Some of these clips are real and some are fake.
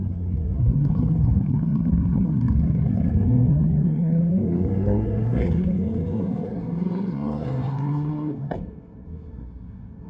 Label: fake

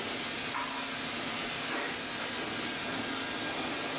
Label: real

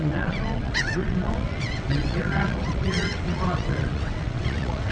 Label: fake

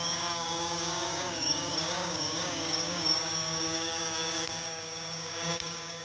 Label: fake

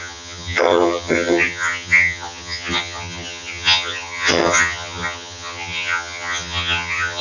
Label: fake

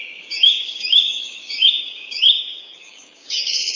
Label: fake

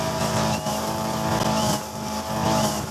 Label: real